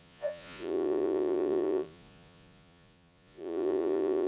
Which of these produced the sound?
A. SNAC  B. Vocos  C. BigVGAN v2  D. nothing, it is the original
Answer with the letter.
B